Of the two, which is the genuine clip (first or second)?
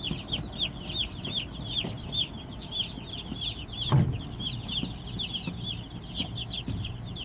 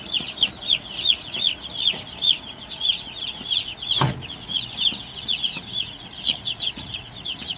first